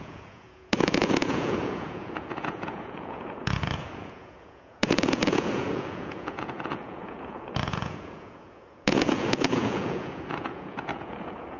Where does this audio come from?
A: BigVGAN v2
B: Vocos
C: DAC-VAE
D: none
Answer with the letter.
B